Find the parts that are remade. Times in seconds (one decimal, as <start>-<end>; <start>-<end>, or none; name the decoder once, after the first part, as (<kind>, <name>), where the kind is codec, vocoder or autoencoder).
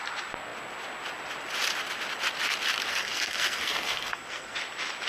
2.9-4.6 (codec, SNAC)